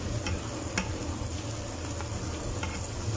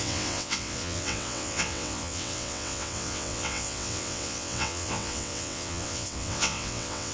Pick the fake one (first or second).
second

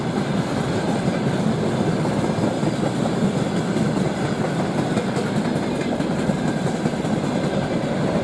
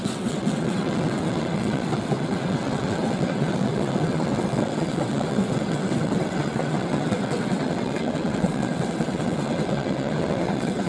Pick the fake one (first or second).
second